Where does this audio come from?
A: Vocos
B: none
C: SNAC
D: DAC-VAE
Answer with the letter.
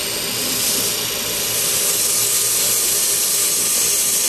B